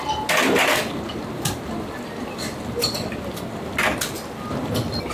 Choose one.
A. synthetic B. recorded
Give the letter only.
B